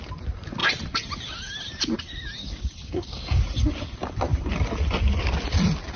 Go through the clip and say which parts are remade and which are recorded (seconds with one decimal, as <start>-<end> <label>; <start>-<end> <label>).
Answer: 0.0-2.4 recorded; 2.4-3.4 remade; 3.4-6.0 recorded